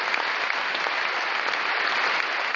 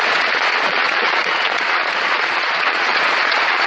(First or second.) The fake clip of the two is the second